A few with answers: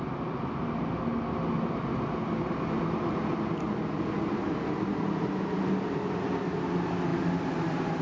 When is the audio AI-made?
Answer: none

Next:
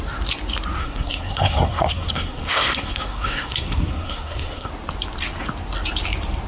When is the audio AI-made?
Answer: 0.8-4.7 (codec, SNAC)

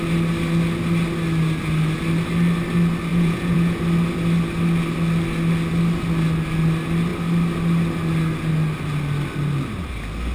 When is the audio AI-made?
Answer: 3.1-3.8 (vocoder, Vocos)

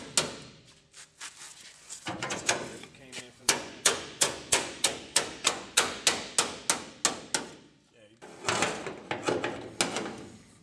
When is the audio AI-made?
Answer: 1.5-6.0 (vocoder, Vocos)

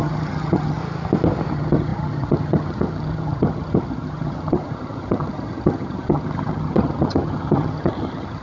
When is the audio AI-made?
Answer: 0.0-0.8 (vocoder, HiFi-GAN); 1.5-8.4

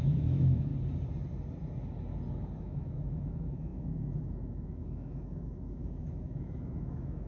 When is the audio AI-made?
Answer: 0.0-0.7 (autoencoder, DAC-VAE); 2.6-7.3

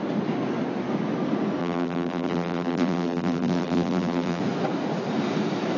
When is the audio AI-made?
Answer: 1.6-4.4 (vocoder, BigVGAN v2)

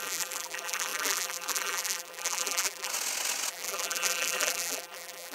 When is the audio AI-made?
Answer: 0.0-2.9 (vocoder, BigVGAN v2); 3.5-5.3